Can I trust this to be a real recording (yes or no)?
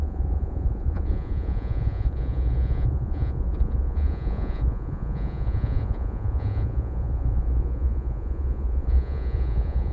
no